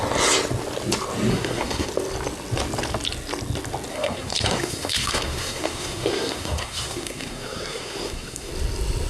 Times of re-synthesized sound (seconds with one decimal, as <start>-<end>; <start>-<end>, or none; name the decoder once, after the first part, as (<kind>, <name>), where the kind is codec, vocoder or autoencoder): 1.3-1.9 (codec, SNAC); 3.9-8.5